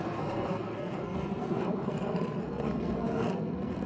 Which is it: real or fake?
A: fake